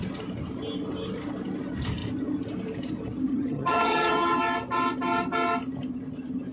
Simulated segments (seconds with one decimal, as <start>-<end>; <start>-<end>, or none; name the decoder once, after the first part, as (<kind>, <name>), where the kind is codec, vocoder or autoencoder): 3.3-4.4 (vocoder, HiFi-GAN)